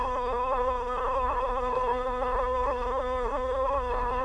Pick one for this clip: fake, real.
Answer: fake